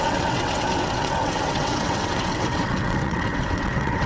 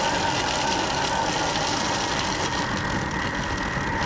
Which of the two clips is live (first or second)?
second